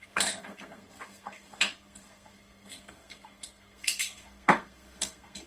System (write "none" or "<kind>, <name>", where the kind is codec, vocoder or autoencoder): codec, SNAC